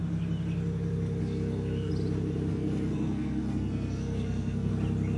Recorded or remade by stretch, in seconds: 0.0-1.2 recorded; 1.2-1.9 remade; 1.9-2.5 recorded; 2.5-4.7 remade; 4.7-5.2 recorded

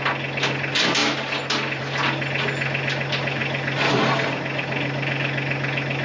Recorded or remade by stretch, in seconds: 0.0-6.0 recorded

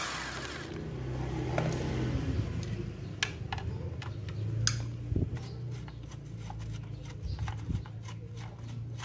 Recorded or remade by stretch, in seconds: 0.0-9.0 recorded

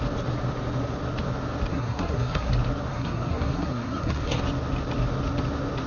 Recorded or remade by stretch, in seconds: 0.0-1.7 recorded; 1.7-2.5 remade; 2.5-2.9 recorded; 2.9-4.4 remade; 4.4-5.9 recorded

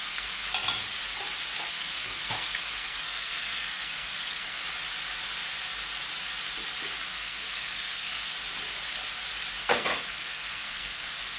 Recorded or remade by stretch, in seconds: 0.0-0.4 remade; 0.4-1.7 recorded; 1.7-4.6 remade; 4.6-7.0 recorded; 7.0-8.3 remade; 8.3-9.6 recorded; 9.6-11.4 remade